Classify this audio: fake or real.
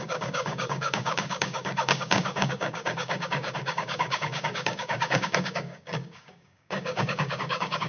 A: fake